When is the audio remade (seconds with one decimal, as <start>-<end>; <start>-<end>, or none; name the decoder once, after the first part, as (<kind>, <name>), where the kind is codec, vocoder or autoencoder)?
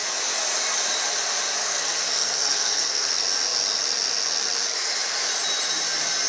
1.6-3.1 (codec, SNAC)